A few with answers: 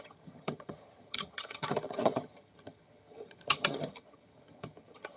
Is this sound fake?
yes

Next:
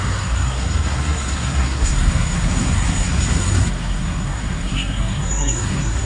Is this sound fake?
yes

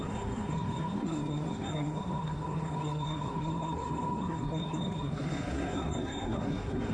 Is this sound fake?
yes